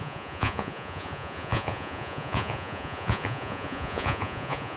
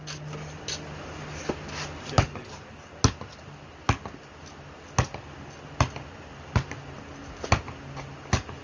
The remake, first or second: first